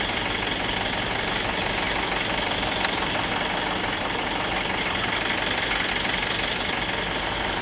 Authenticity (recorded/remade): recorded